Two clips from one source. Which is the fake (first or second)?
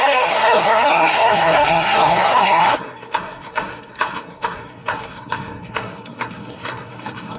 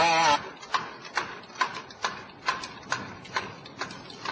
first